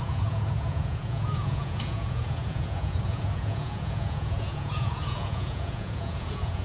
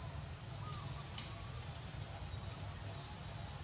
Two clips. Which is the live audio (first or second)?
second